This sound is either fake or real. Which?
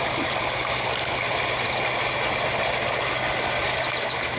real